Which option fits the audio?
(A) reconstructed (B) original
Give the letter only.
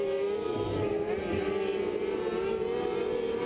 B